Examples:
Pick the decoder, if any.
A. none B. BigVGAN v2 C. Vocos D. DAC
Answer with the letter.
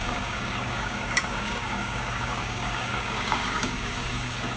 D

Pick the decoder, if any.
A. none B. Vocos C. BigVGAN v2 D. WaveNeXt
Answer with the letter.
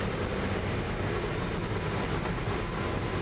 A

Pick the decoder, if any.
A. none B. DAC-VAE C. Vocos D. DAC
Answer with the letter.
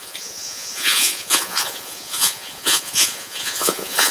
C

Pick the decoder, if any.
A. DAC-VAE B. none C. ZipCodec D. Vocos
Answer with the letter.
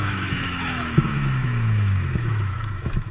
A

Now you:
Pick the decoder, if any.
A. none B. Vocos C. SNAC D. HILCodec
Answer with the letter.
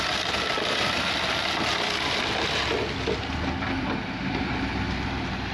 A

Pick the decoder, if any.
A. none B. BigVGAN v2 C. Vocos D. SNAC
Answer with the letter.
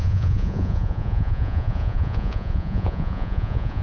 C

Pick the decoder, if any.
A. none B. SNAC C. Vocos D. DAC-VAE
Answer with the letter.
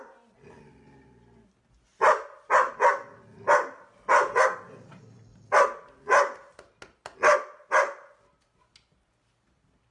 A